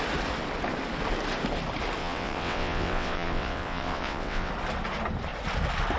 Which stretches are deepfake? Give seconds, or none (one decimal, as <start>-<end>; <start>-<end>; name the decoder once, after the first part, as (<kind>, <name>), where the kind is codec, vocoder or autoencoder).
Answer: 2.0-4.5 (vocoder, WaveNeXt)